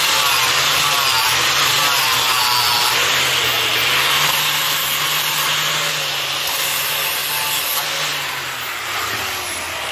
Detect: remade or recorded recorded